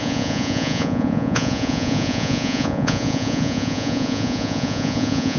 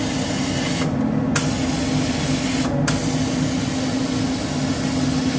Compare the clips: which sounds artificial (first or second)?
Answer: first